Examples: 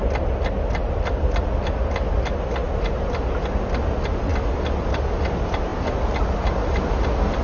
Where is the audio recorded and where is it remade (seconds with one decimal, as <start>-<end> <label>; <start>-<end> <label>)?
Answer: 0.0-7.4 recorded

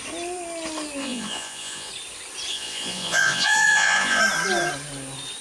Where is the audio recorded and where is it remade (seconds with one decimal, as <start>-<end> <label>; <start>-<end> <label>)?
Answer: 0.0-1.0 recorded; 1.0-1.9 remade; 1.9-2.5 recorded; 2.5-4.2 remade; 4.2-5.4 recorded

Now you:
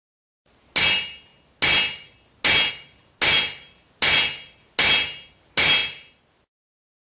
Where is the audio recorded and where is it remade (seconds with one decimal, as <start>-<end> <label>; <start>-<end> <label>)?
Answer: 0.0-7.2 recorded

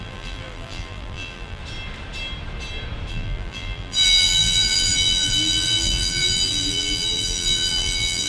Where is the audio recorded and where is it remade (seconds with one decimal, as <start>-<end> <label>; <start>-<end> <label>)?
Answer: 0.0-1.6 remade; 1.6-3.1 recorded; 3.1-8.3 remade